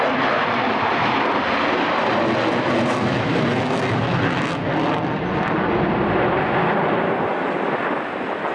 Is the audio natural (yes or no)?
yes